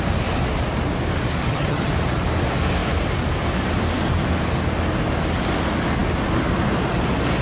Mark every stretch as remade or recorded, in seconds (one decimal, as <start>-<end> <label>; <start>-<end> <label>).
0.0-1.4 recorded; 1.4-1.9 remade; 1.9-7.4 recorded